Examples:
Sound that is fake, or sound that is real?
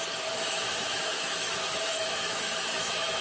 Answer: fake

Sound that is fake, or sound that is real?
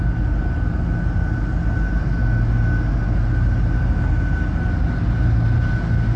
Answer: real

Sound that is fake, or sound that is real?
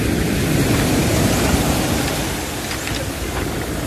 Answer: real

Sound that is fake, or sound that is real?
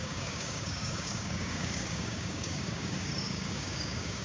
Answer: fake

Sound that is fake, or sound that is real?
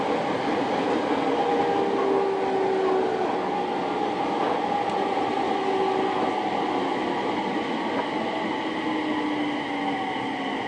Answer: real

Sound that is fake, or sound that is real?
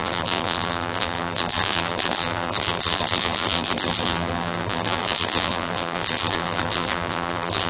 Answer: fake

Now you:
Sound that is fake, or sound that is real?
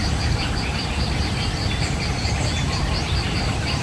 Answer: fake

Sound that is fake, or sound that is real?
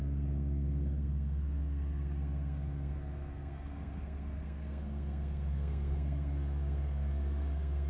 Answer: fake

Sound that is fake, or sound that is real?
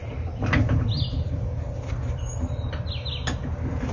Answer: real